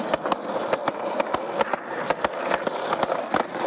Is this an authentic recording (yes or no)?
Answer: yes